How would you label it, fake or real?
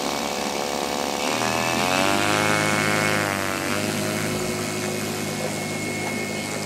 real